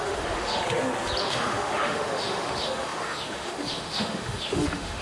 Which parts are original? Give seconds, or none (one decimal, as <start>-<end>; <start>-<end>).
0.6-1.2